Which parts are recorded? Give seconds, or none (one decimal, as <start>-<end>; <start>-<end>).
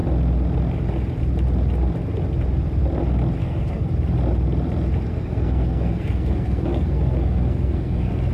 0.0-3.4; 3.9-5.1